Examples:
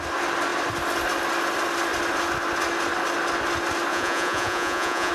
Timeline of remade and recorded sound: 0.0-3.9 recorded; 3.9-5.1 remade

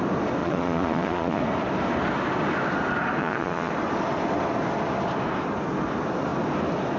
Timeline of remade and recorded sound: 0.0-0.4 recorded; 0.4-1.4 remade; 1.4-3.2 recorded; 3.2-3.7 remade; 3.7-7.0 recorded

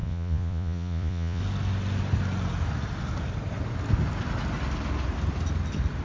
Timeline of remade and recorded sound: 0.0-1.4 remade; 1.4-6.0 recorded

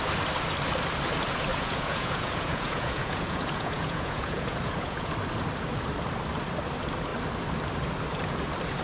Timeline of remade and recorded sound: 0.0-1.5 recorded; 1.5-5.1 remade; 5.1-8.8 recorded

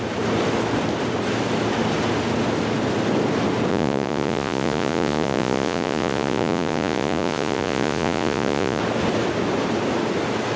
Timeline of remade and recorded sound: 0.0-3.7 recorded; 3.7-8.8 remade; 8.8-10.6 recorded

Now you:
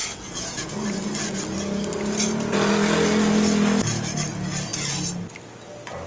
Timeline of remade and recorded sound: 0.0-0.7 remade; 0.7-6.1 recorded